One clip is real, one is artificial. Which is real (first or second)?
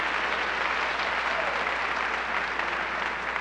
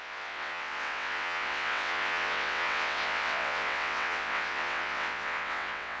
first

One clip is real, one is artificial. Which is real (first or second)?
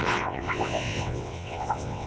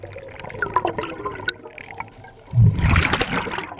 second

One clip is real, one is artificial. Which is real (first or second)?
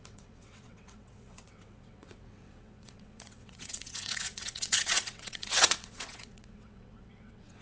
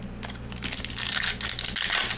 second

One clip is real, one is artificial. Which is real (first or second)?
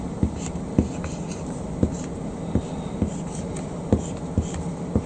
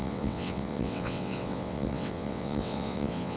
first